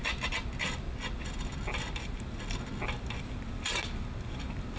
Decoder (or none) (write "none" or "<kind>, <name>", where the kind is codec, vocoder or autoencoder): none